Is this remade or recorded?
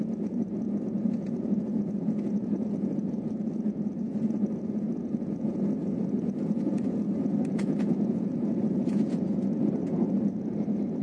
remade